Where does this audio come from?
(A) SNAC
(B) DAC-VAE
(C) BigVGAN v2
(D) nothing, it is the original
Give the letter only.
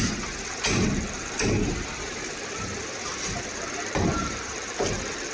C